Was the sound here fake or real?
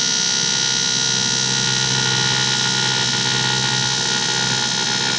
real